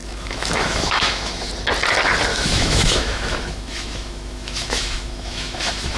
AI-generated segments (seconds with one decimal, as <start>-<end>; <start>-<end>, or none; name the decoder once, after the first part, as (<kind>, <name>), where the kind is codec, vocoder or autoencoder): 0.0-1.5 (autoencoder, DAC-VAE); 2.3-6.0